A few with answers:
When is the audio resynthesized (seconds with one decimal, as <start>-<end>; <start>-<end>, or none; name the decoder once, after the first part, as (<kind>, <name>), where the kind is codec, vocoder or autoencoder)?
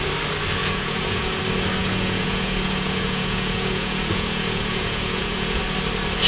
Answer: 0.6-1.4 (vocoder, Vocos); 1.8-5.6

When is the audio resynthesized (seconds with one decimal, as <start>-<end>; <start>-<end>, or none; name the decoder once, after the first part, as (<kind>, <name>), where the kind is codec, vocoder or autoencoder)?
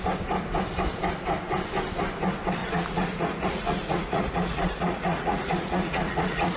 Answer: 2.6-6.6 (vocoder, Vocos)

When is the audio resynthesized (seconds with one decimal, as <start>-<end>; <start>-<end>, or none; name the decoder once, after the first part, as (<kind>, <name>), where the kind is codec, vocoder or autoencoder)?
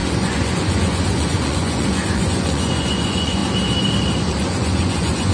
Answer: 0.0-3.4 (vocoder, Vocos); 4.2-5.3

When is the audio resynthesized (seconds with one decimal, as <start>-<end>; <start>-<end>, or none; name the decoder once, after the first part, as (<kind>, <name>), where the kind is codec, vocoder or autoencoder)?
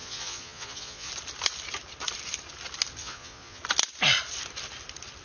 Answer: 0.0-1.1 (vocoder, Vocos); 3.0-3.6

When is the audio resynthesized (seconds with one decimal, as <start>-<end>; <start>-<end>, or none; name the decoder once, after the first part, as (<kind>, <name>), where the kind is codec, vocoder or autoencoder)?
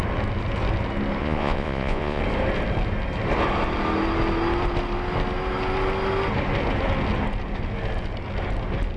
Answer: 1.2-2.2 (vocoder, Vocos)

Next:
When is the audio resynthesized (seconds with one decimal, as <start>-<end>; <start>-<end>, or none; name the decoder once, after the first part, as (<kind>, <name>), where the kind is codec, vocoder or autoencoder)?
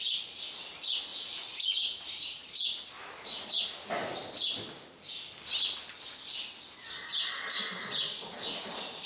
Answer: 1.1-2.4 (vocoder, Vocos)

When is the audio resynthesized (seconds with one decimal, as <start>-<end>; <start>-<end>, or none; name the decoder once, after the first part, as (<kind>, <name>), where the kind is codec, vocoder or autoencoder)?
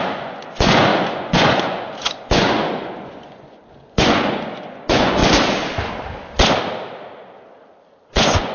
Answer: 0.0-5.2 (vocoder, Vocos); 8.1-8.5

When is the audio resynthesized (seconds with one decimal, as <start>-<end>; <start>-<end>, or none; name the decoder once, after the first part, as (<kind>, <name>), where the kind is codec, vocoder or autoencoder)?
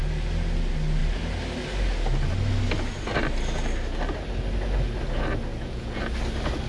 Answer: 5.5-6.0 (vocoder, Vocos)